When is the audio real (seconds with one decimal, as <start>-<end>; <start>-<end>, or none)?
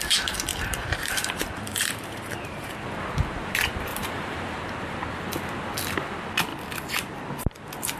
0.0-0.5; 2.7-3.9; 4.6-8.0